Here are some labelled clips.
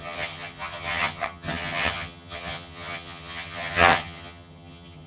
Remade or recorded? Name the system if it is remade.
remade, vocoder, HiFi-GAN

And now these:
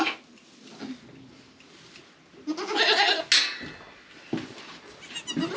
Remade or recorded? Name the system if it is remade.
recorded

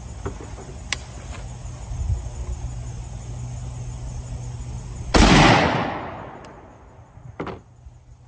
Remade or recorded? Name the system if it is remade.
recorded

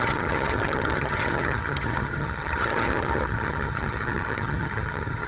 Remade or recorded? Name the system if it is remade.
remade, vocoder, HiFi-GAN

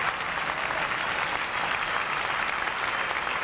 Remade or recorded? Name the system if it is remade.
recorded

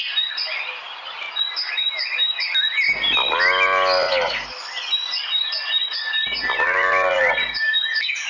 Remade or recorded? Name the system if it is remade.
recorded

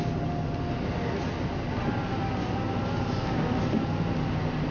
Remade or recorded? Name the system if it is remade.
recorded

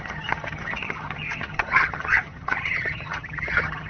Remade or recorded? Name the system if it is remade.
remade, vocoder, HiFi-GAN